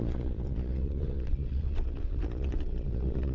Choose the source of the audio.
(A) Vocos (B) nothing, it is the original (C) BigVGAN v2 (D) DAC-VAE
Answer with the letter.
A